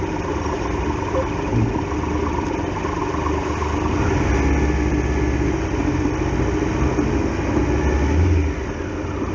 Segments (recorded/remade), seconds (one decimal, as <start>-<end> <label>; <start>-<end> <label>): 0.0-9.3 recorded